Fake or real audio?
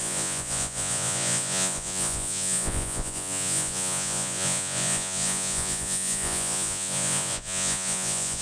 fake